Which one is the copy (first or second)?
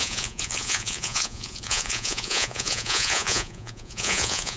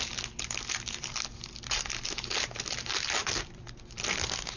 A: first